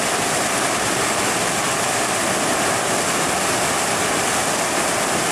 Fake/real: fake